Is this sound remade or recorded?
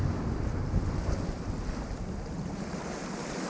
recorded